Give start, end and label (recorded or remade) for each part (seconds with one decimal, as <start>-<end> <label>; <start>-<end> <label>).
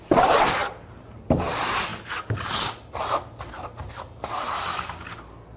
0.0-5.6 recorded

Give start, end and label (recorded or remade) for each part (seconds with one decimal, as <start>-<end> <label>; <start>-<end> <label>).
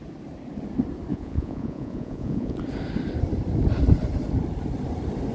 0.0-1.1 recorded; 1.1-2.6 remade; 2.6-5.3 recorded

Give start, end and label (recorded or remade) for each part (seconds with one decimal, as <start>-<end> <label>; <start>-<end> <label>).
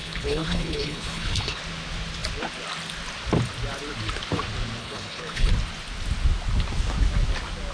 0.0-1.6 remade; 1.6-4.8 recorded; 4.8-5.5 remade; 5.5-7.7 recorded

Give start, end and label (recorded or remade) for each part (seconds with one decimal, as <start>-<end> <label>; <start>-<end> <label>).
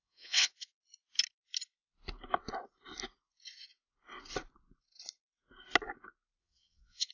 0.0-0.8 remade; 0.8-6.4 recorded; 6.4-7.1 remade